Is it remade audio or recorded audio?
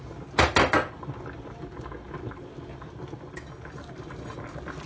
recorded